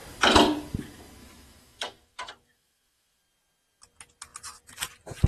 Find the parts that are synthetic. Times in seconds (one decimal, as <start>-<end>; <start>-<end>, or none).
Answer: 1.2-3.2